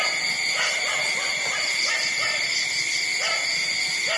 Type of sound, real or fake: real